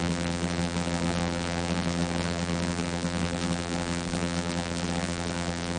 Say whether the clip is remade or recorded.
remade